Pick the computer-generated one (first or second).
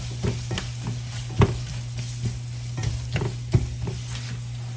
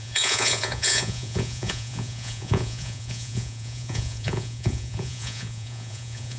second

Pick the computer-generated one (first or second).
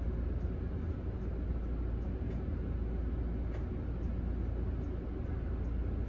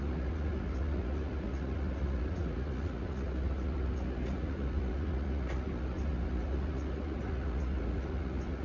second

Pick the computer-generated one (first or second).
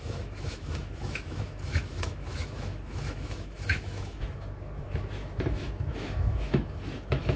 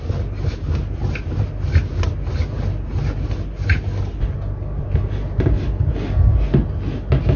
first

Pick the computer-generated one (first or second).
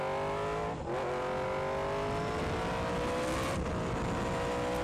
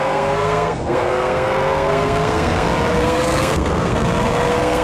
second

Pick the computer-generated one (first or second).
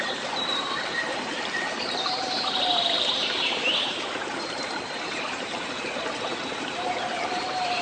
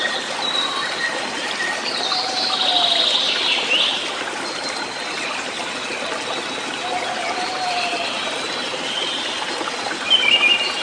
first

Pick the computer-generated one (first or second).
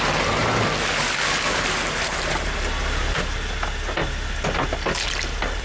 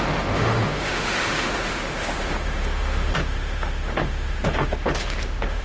second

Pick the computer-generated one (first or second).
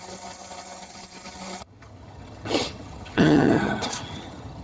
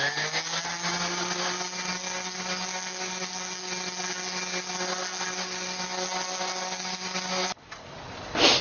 first